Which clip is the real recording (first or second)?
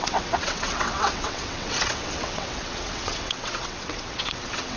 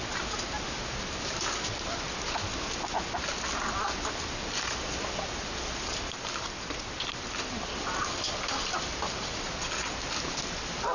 second